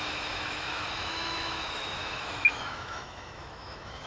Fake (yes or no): yes